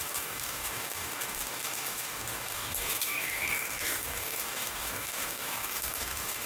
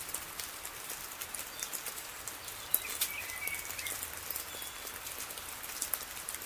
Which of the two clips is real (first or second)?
second